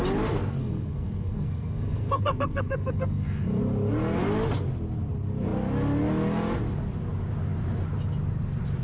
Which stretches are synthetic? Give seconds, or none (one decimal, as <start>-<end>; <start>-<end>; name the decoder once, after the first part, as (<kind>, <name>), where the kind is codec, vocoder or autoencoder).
0.6-3.6 (codec, SNAC)